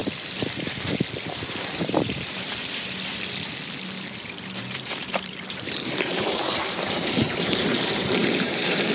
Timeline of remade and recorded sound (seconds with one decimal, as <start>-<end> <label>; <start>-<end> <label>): 0.0-1.3 recorded; 1.3-2.5 remade; 2.5-4.6 recorded; 4.6-8.9 remade